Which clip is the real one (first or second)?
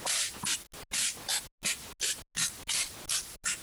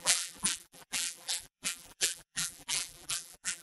first